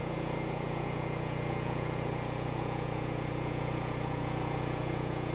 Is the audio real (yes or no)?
no